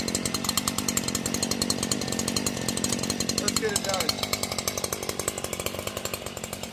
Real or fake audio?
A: fake